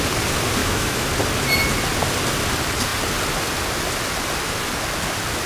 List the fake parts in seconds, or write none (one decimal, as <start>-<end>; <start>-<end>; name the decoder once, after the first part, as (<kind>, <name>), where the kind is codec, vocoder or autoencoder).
0.6-1.1 (autoencoder, DAC-VAE)